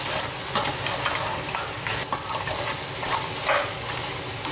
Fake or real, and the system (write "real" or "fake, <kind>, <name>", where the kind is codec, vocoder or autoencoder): real